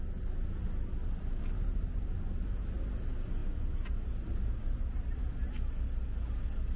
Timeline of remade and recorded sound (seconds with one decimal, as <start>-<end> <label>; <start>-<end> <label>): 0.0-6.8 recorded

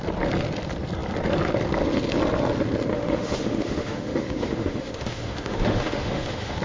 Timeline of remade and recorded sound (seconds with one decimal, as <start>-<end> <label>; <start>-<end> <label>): 0.0-2.9 recorded; 2.9-6.6 remade

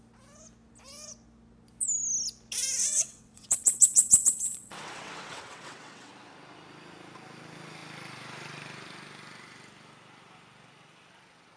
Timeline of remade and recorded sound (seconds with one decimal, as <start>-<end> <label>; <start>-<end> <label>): 0.0-2.8 recorded; 2.8-6.1 remade; 6.1-11.6 recorded

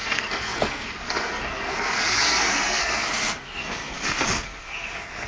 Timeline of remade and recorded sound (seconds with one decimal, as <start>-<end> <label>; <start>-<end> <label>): 0.0-5.3 remade